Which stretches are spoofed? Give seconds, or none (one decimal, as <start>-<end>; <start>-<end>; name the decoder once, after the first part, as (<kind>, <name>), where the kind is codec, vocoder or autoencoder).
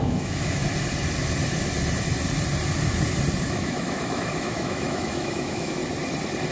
0.0-0.6 (autoencoder, DAC-VAE); 3.4-5.8